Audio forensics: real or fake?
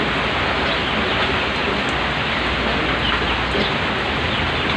real